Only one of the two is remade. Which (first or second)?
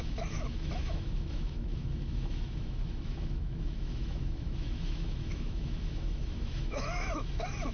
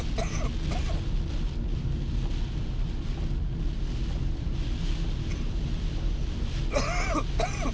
first